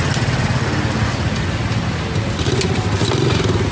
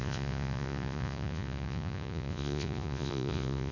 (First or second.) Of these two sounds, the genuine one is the first